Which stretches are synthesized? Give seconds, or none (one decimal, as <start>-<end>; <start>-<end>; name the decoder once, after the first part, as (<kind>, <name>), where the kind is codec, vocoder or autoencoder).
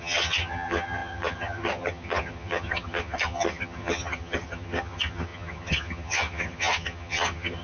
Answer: 0.0-7.6 (vocoder, HiFi-GAN)